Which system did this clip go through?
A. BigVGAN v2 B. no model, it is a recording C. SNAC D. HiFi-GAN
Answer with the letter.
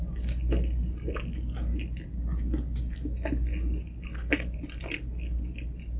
B